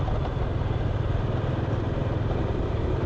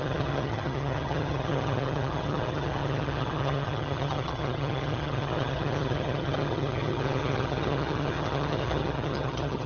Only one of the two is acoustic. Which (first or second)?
first